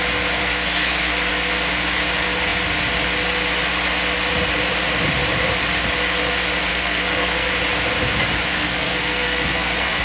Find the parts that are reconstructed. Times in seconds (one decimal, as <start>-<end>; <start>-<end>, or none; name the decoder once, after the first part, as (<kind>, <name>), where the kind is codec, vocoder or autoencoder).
0.4-1.3 (codec, SNAC); 6.7-7.5; 8.5-10.0